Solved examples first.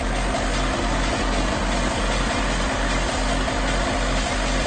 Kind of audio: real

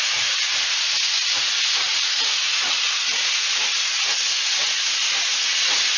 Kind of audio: fake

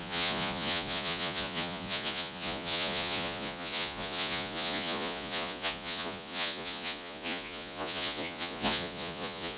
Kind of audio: fake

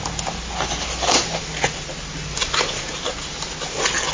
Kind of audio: real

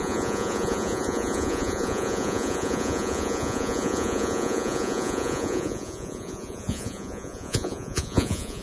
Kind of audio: fake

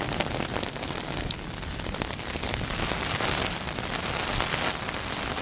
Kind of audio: real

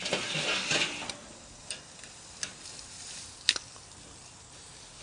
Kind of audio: real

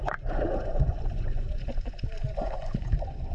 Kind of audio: fake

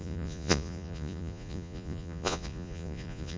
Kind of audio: fake